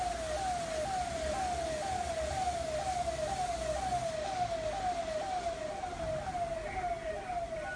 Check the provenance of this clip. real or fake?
real